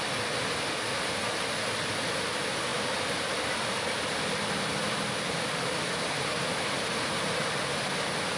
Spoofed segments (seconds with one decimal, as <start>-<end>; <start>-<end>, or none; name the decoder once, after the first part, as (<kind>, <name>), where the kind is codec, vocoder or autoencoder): 2.7-5.7 (vocoder, BigVGAN v2)